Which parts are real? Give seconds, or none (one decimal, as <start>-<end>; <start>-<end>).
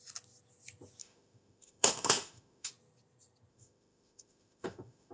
0.0-1.0; 2.7-3.5